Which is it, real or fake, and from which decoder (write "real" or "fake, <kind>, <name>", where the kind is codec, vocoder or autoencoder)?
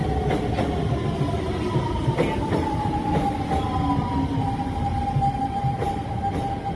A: real